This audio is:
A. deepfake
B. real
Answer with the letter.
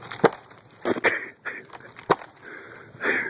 B